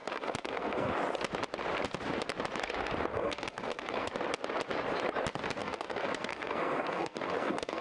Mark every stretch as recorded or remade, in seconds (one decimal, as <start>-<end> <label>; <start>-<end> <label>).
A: 0.0-0.9 remade; 0.9-3.1 recorded; 3.1-4.1 remade; 4.1-5.6 recorded; 5.6-7.8 remade